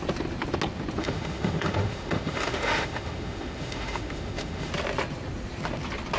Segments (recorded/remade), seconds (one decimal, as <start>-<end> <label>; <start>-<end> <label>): 0.0-1.0 recorded; 1.0-4.7 remade; 4.7-6.2 recorded